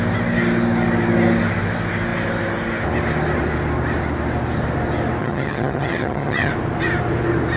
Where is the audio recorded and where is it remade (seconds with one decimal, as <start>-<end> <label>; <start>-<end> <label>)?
0.0-5.2 recorded; 5.2-6.5 remade; 6.5-7.6 recorded